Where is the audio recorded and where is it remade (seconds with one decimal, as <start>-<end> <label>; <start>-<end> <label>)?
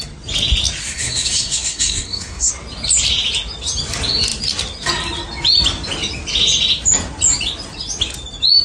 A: 0.0-0.8 recorded; 0.8-2.5 remade; 2.5-8.6 recorded